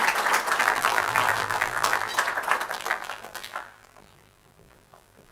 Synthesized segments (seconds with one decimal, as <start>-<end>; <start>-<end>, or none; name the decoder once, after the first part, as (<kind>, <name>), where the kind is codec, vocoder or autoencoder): 0.6-2.1 (vocoder, BigVGAN v2); 2.7-5.3